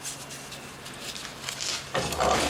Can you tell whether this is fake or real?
real